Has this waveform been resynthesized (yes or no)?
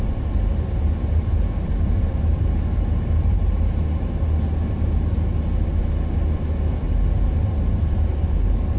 no